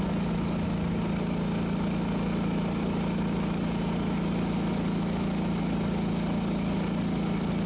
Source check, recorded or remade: recorded